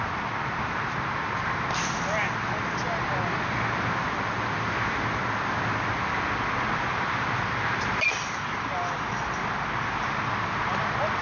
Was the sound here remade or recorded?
recorded